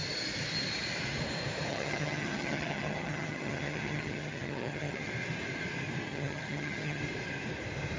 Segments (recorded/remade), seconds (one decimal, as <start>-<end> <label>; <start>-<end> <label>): 0.0-1.7 recorded; 1.7-5.1 remade; 5.1-6.1 recorded; 6.1-7.0 remade; 7.0-8.0 recorded